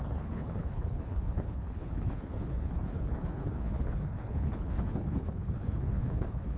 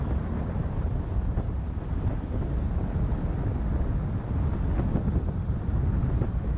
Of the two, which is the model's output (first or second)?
first